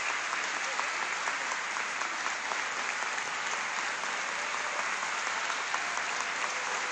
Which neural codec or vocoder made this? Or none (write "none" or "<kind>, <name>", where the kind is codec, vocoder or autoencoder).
none